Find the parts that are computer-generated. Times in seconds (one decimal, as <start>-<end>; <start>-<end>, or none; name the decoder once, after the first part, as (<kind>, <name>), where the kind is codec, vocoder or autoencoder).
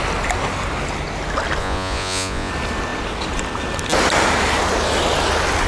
1.6-2.5 (vocoder, Vocos)